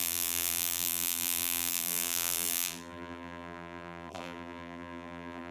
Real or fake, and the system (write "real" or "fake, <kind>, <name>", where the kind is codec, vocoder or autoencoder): fake, vocoder, BigVGAN v2